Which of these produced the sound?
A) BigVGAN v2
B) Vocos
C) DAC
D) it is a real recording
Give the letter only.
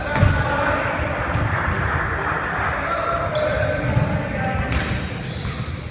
D